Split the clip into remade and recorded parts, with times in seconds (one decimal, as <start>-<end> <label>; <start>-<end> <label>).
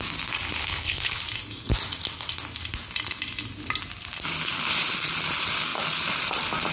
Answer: 0.0-0.6 recorded; 0.6-1.2 remade; 1.2-6.7 recorded